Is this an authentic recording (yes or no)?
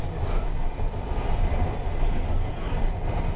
yes